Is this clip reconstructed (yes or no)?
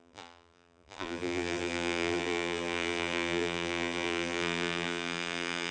yes